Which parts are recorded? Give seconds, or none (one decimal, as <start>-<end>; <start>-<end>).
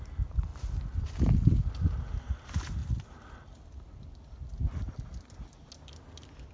0.0-6.5